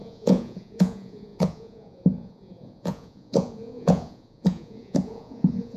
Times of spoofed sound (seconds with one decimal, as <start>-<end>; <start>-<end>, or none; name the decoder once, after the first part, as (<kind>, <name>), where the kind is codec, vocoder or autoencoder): 0.0-5.8 (vocoder, Vocos)